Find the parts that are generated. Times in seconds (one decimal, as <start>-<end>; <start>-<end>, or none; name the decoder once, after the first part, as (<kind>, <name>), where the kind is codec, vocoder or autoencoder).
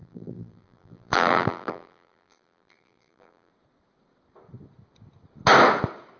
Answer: 0.0-3.5 (vocoder, BigVGAN v2)